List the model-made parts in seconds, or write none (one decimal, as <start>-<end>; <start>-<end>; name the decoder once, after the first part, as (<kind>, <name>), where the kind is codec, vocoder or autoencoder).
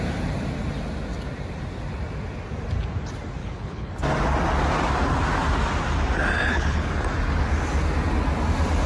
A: 3.4-3.9 (codec, HILCodec); 6.4-6.9